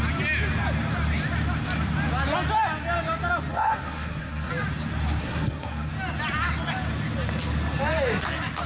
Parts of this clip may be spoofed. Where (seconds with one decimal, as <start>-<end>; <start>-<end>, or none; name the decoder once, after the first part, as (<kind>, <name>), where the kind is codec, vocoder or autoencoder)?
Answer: 3.5-4.5 (codec, SNAC); 5.2-5.9